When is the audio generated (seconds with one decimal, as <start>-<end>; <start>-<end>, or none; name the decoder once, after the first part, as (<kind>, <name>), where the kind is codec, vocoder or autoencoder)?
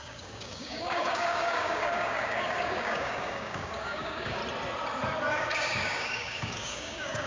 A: 0.0-4.4 (codec, DAC); 5.3-7.3